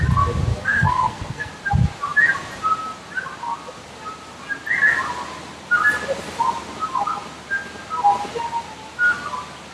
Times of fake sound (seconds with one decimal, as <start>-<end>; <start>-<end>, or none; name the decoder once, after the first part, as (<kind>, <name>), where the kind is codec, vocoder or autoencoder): 0.5-1.5 (codec, SNAC)